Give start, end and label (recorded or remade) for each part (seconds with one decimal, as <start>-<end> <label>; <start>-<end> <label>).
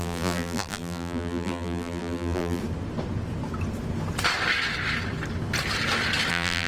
0.0-2.6 remade; 2.6-6.3 recorded; 6.3-6.7 remade